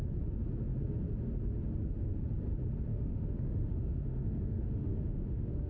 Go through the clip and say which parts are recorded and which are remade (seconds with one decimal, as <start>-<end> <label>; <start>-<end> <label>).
0.0-2.9 recorded; 2.9-5.7 remade